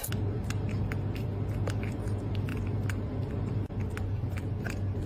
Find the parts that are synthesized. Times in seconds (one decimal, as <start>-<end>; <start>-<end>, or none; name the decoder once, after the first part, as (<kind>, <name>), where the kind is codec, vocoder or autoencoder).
none